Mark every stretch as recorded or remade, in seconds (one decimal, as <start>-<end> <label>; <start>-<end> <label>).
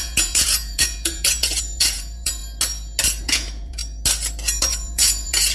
0.0-2.4 remade; 2.4-3.2 recorded; 3.2-3.8 remade; 3.8-4.6 recorded; 4.6-5.5 remade